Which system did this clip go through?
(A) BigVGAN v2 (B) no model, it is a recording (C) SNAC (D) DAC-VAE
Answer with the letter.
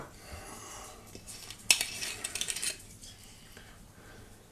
B